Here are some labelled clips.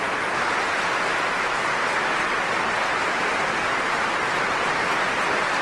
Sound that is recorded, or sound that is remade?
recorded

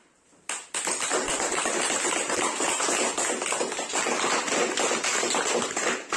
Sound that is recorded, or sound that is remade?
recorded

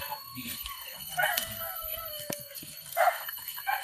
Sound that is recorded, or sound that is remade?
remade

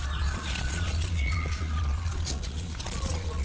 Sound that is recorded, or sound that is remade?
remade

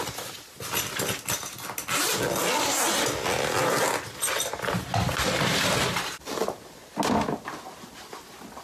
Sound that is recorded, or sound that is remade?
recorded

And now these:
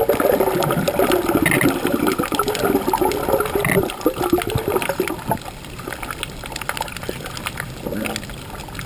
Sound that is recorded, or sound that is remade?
recorded